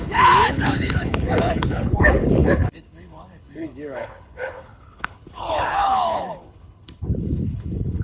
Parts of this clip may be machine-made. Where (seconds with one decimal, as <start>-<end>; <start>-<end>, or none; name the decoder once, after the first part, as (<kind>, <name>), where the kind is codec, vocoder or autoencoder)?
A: 0.0-8.0 (codec, HILCodec)